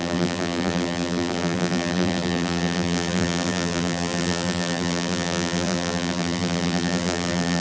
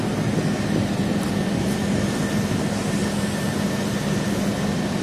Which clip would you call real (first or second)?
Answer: second